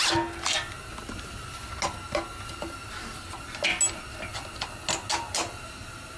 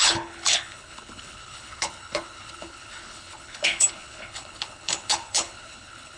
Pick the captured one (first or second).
first